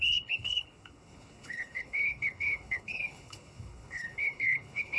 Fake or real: fake